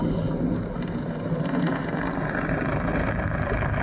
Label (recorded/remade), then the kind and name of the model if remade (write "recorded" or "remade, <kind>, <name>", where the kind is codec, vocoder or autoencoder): recorded